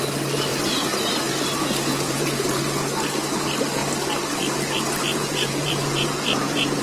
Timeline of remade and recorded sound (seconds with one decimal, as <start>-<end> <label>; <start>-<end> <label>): 0.0-1.9 recorded; 1.9-2.6 remade; 2.6-5.1 recorded; 5.1-6.8 remade